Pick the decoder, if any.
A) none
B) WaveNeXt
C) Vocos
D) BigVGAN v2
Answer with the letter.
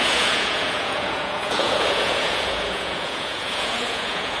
C